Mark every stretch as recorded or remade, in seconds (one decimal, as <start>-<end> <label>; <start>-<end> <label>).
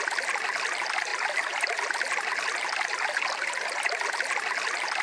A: 0.0-5.0 recorded